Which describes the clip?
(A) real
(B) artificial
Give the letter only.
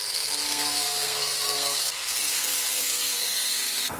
B